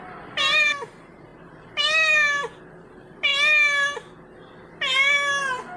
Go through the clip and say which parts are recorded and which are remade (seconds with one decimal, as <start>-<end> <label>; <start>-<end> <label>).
0.0-5.8 recorded